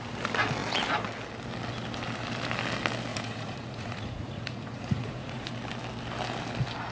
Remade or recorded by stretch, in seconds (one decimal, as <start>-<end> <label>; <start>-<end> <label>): 0.0-3.1 recorded; 3.1-5.5 remade; 5.5-6.9 recorded